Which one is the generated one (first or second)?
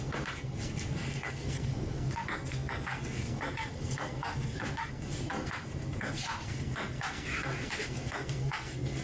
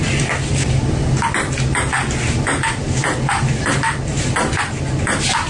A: first